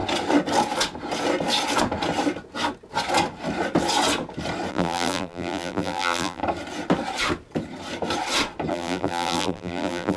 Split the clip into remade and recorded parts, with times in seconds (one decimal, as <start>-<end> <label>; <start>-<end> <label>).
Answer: 0.0-4.7 recorded; 4.7-6.4 remade; 6.4-8.7 recorded; 8.7-10.2 remade